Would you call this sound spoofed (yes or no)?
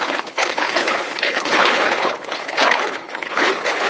yes